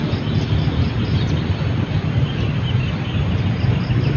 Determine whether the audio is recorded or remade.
recorded